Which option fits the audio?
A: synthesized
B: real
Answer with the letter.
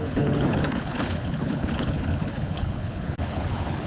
A